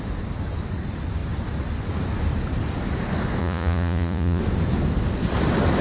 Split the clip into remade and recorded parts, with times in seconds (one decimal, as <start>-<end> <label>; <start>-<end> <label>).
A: 0.0-3.4 recorded; 3.4-4.4 remade; 4.4-5.8 recorded